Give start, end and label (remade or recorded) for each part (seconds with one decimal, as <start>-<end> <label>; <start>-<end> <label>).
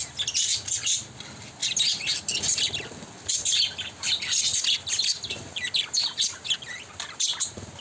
0.0-7.8 recorded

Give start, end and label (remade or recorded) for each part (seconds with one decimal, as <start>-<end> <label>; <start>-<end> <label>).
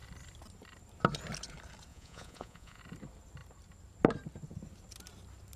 0.0-1.9 recorded; 1.9-2.8 remade; 2.8-5.6 recorded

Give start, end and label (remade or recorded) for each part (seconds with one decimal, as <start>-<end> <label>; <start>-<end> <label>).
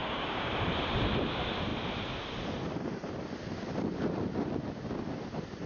0.0-0.5 remade; 0.5-5.7 recorded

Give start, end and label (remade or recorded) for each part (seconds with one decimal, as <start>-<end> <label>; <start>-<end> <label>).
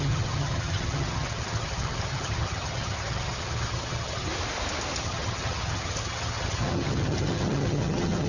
0.0-4.3 remade; 4.3-5.0 recorded; 5.0-8.3 remade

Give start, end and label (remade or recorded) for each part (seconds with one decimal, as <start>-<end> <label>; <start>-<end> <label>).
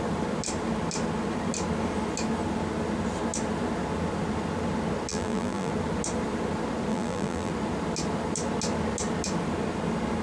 0.0-5.1 recorded; 5.1-5.7 remade; 5.7-6.9 recorded; 6.9-7.5 remade; 7.5-10.2 recorded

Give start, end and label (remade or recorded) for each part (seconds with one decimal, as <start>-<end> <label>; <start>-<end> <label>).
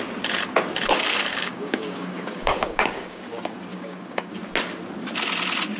0.0-1.3 recorded; 1.3-3.2 remade; 3.2-3.7 recorded; 3.7-4.3 remade; 4.3-5.8 recorded